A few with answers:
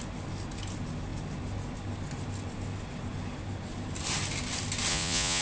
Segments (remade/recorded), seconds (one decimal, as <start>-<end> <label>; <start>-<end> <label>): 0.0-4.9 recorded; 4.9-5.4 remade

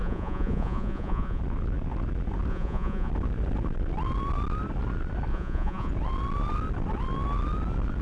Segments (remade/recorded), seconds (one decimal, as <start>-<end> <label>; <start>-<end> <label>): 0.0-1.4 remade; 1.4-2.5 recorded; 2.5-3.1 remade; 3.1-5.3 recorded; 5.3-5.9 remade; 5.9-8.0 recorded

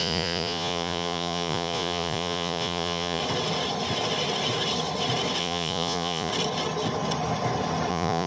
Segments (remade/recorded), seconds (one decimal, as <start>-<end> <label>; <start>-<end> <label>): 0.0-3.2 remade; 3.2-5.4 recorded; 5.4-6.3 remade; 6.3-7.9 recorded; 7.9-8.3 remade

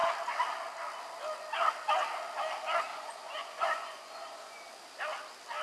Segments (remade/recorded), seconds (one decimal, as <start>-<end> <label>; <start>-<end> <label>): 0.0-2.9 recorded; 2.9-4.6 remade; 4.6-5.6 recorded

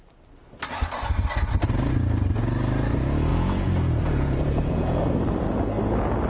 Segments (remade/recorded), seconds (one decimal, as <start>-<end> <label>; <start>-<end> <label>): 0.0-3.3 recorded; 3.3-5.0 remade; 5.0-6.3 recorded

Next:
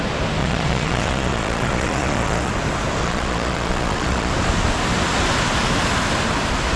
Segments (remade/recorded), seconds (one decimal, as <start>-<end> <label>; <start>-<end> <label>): 0.0-0.4 recorded; 0.4-2.5 remade; 2.5-3.0 recorded; 3.0-4.3 remade; 4.3-6.8 recorded

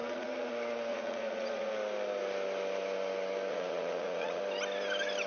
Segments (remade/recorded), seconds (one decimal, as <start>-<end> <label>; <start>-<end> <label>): 0.0-0.5 remade; 0.5-0.9 recorded; 0.9-1.7 remade; 1.7-3.5 recorded; 3.5-4.4 remade; 4.4-5.3 recorded